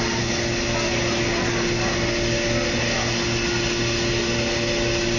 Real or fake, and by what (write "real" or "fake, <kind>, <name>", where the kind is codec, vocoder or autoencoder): real